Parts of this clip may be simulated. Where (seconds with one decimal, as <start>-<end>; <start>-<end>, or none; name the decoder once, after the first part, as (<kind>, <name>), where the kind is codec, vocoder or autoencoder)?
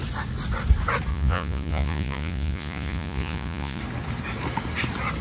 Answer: 1.1-3.8 (vocoder, Vocos)